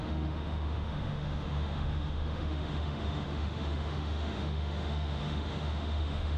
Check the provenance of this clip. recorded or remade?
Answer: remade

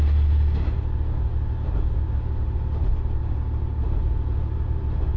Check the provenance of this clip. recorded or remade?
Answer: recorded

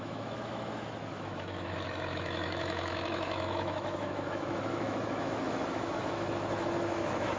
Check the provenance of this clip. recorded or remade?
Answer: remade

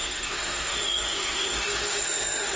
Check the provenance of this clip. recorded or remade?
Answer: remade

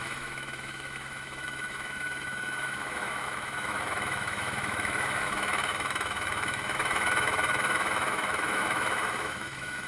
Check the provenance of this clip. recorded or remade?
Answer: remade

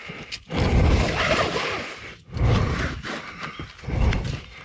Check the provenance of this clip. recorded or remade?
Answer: recorded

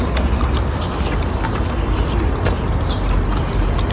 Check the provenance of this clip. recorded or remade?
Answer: recorded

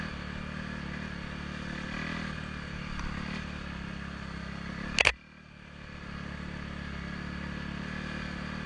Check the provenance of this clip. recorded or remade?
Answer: recorded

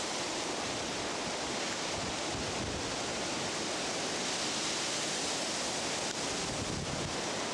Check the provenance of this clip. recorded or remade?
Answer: recorded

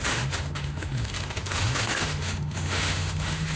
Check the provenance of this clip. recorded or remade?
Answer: remade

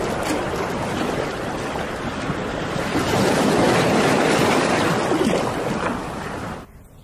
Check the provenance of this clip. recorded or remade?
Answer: recorded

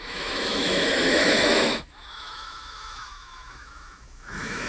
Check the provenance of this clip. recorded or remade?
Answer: remade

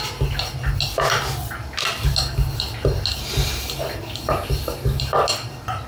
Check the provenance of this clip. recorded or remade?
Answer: recorded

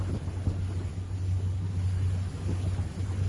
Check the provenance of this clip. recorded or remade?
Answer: recorded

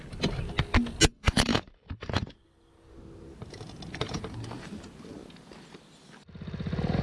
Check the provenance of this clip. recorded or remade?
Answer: recorded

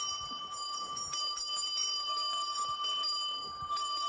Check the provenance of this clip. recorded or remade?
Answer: remade